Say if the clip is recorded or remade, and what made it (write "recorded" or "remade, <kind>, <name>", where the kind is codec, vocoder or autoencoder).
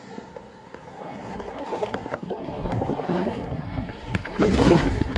remade, codec, SNAC